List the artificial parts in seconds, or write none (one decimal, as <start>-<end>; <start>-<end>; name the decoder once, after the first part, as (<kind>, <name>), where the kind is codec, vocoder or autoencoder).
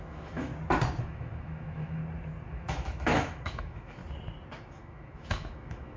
0.0-0.5 (autoencoder, DAC-VAE); 1.0-2.0; 2.5-4.0; 4.7-6.0